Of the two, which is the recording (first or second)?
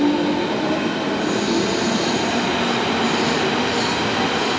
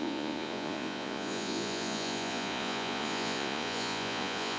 first